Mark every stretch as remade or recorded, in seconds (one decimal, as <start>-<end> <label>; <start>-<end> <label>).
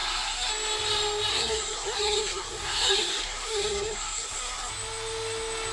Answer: 0.0-0.5 remade; 0.5-1.3 recorded; 1.3-4.7 remade; 4.7-5.7 recorded